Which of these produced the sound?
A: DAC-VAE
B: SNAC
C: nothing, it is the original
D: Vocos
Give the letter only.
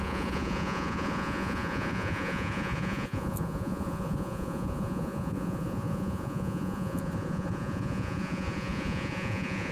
D